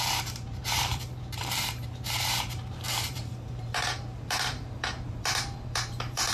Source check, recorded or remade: remade